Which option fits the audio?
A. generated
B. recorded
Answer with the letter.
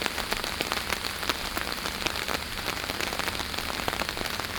B